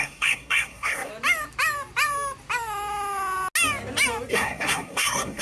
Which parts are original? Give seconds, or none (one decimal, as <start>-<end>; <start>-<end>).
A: 1.1-4.3